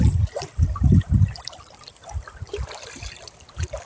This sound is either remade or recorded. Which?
recorded